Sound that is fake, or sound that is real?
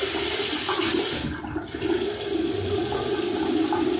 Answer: real